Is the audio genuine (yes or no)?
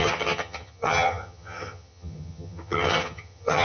no